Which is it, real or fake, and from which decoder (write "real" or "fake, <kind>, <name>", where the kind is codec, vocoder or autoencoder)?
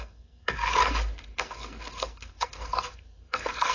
fake, codec, SNAC